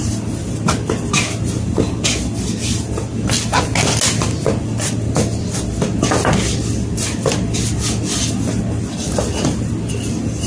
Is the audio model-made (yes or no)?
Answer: no